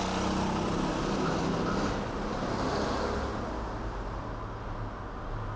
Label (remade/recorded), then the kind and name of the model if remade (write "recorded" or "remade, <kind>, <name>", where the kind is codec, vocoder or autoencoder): recorded